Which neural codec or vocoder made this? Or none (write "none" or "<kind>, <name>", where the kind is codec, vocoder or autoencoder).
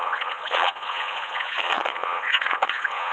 vocoder, Vocos